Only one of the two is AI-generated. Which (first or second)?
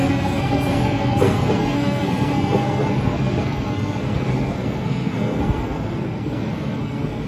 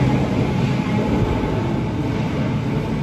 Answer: first